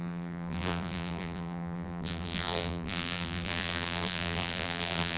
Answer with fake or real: fake